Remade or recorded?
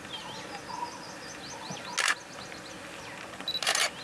recorded